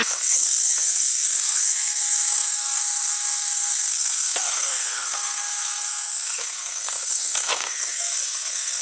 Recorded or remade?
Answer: remade